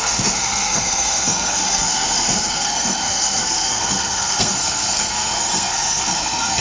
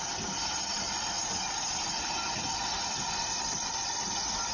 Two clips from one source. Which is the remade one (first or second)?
first